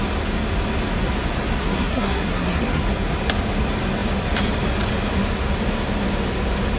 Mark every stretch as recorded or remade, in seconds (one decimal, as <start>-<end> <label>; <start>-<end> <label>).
0.0-1.6 recorded; 1.6-2.8 remade; 2.8-6.8 recorded